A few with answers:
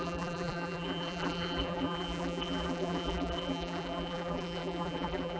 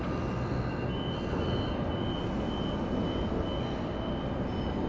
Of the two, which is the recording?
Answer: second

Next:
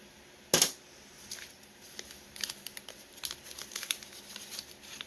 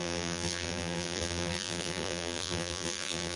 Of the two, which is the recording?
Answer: first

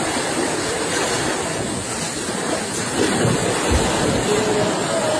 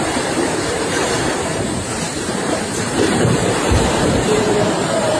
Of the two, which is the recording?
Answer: first